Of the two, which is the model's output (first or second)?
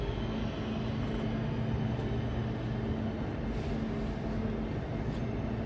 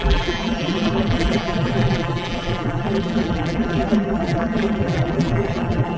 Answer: second